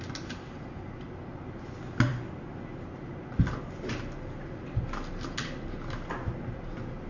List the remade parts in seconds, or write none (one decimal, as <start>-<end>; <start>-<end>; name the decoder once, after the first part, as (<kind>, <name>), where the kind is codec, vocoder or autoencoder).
none